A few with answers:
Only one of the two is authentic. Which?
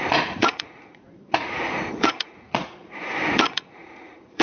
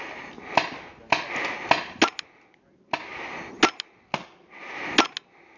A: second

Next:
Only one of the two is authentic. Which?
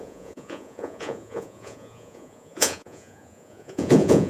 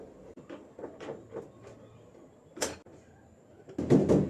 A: second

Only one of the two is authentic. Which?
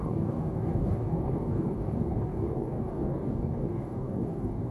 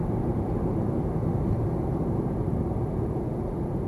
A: second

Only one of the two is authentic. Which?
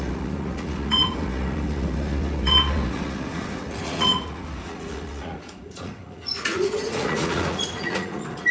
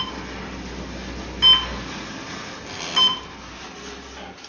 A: second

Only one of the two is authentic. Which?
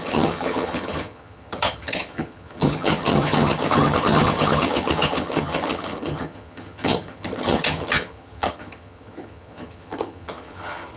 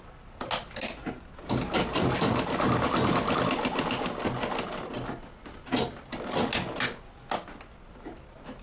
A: second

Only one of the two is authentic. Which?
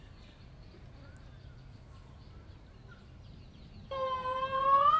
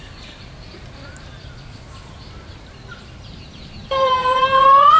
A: first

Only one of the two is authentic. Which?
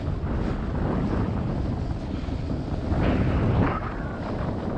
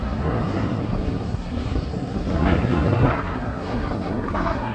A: first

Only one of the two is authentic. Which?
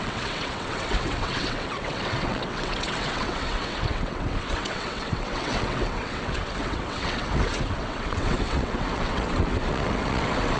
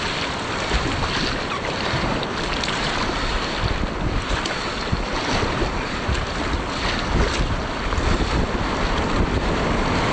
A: second